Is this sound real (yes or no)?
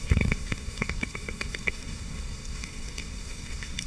no